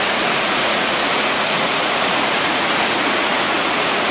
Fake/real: fake